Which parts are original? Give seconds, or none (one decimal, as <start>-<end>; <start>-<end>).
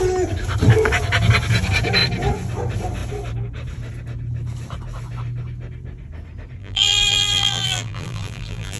0.0-6.6